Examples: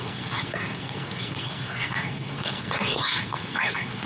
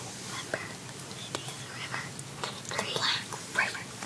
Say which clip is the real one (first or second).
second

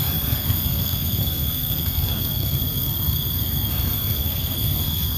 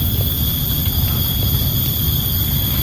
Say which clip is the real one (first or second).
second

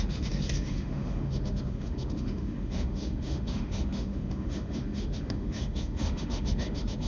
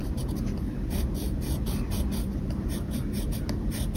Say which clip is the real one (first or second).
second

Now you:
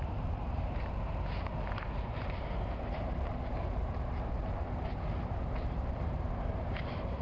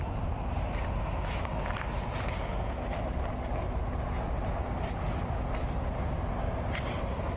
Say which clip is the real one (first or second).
second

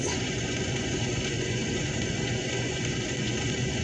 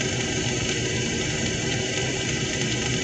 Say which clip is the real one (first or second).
second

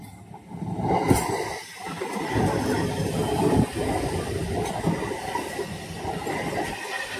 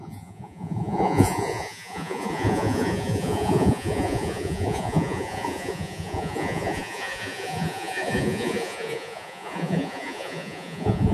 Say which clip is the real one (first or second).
first